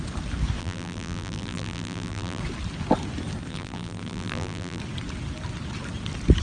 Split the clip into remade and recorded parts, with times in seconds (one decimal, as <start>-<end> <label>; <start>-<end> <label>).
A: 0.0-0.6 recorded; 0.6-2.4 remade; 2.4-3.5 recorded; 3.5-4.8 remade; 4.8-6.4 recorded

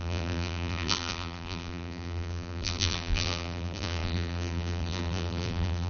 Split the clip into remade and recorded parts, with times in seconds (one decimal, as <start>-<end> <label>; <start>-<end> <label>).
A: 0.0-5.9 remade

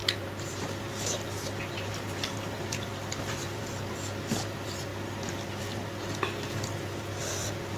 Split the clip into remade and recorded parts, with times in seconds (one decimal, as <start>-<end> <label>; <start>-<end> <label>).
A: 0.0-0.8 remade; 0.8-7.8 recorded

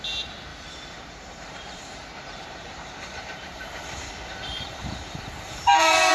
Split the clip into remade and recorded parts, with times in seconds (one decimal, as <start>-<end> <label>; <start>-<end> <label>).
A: 0.0-0.5 recorded; 0.5-3.6 remade; 3.6-4.3 recorded; 4.3-6.1 remade

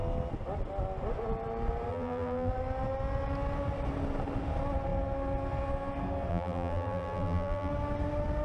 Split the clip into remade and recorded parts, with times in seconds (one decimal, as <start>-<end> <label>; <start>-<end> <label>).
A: 0.0-1.9 recorded; 1.9-2.5 remade; 2.5-6.3 recorded; 6.3-7.7 remade; 7.7-8.4 recorded